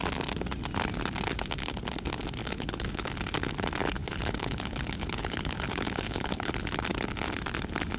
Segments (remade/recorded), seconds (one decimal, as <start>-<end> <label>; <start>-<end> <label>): 0.0-2.4 recorded; 2.4-3.1 remade; 3.1-4.0 recorded; 4.0-6.5 remade; 6.5-8.0 recorded